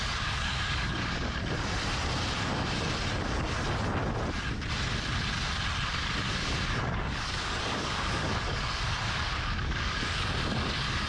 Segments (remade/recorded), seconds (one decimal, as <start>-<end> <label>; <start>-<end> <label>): 0.0-1.4 remade; 1.4-5.9 recorded; 5.9-11.1 remade